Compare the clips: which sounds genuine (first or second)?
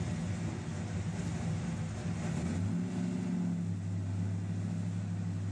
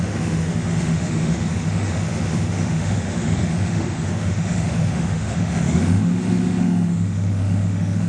first